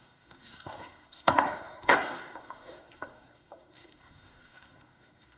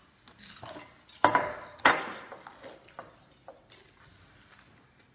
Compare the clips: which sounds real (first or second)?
second